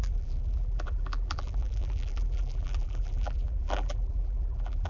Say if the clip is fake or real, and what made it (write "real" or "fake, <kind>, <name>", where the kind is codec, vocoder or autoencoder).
fake, vocoder, BigVGAN v2